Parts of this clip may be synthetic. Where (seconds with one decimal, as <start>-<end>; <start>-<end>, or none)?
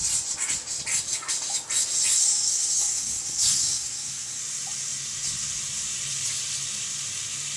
2.2-4.4